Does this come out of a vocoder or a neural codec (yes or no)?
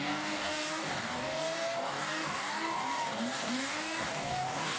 yes